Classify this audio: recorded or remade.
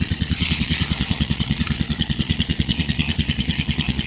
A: remade